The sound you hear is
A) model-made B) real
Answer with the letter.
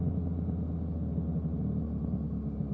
B